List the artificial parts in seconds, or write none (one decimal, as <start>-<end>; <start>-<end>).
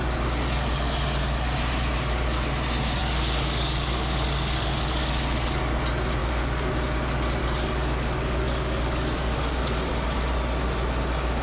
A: 3.0-5.6; 6.2-6.7; 7.4-9.9